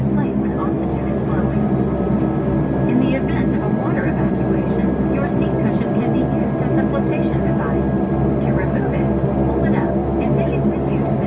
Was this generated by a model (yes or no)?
no